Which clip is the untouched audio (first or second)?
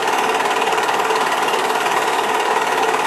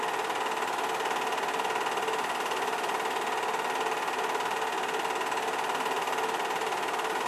second